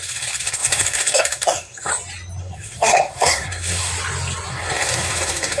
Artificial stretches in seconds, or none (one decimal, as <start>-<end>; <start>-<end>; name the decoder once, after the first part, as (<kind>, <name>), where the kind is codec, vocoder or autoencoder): 0.0-1.9 (codec, SNAC); 2.4-3.9; 4.5-5.6

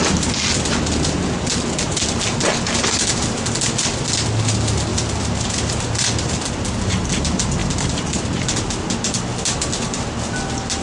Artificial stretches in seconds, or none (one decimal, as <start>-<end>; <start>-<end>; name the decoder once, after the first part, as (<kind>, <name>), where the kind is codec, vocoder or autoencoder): 4.9-6.5 (vocoder, BigVGAN v2); 7.6-8.9